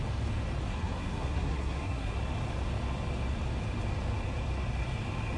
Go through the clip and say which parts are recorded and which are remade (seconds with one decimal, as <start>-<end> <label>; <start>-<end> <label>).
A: 0.0-0.7 recorded; 0.7-2.1 remade; 2.1-5.4 recorded